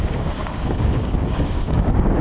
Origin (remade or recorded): remade